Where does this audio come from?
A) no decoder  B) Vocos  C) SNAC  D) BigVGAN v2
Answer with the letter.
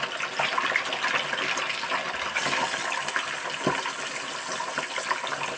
A